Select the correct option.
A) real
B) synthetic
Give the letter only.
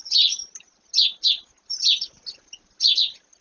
A